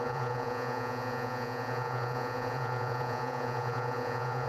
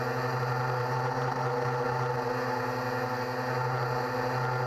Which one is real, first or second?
second